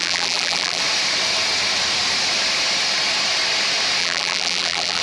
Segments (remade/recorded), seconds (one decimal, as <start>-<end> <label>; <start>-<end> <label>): 0.0-0.8 remade; 0.8-4.0 recorded; 4.0-5.0 remade